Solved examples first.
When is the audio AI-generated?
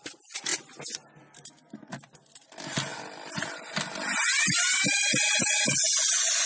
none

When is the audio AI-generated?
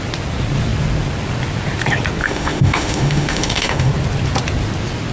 2.2-3.9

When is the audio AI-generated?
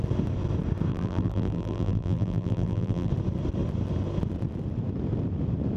0.9-3.1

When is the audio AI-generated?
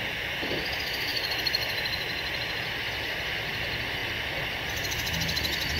4.0-4.5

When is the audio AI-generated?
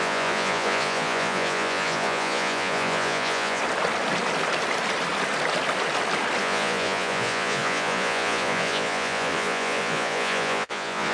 0.0-3.6; 6.4-11.1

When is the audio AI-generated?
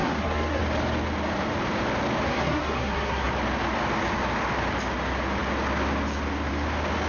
0.0-0.6; 2.3-3.3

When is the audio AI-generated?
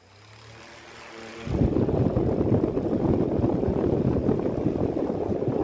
none